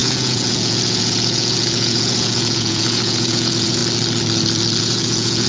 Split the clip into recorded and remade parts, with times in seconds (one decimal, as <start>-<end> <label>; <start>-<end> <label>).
0.0-3.8 remade; 3.8-4.8 recorded; 4.8-5.5 remade